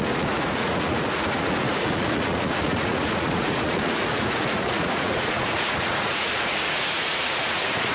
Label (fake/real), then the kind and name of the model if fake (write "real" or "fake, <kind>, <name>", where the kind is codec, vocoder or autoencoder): fake, vocoder, Vocos